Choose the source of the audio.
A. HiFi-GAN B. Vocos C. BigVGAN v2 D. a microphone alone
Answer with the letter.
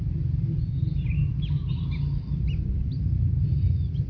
D